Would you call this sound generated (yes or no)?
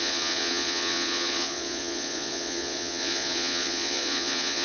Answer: yes